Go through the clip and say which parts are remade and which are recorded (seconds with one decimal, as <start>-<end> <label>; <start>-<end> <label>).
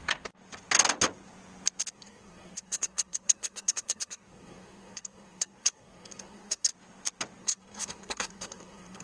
0.0-1.9 recorded; 1.9-6.7 remade; 6.7-7.4 recorded; 7.4-9.0 remade